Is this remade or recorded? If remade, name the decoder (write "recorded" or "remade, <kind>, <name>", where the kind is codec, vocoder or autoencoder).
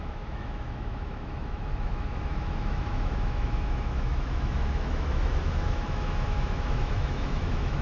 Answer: remade, autoencoder, DAC-VAE